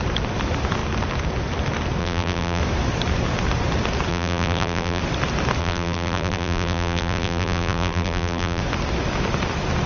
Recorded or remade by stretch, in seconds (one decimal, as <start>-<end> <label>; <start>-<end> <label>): 0.0-2.0 recorded; 2.0-2.6 remade; 2.6-4.1 recorded; 4.1-5.0 remade; 5.0-5.6 recorded; 5.6-8.6 remade; 8.6-9.9 recorded